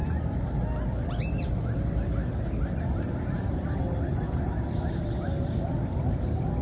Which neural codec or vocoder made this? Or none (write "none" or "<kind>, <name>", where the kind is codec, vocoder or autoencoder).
none